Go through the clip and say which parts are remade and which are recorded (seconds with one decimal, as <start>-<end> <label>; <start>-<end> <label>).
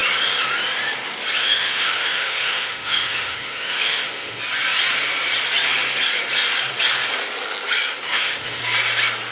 0.0-1.4 recorded; 1.4-4.4 remade; 4.4-8.1 recorded; 8.1-8.6 remade; 8.6-9.3 recorded